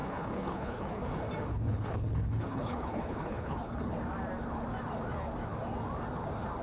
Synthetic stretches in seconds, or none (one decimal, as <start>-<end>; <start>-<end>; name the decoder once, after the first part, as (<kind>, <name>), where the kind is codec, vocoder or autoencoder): 0.0-1.1 (codec, HILCodec); 1.5-3.9